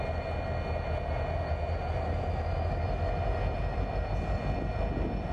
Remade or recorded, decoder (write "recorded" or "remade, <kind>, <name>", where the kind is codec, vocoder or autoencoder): recorded